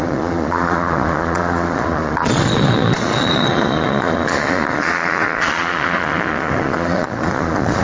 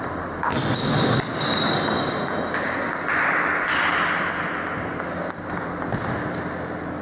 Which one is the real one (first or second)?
second